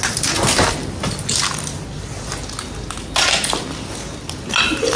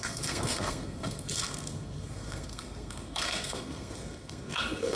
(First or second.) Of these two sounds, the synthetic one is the second